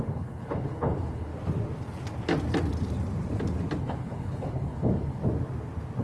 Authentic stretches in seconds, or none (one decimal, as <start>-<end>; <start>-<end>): 1.3-3.8; 5.2-6.0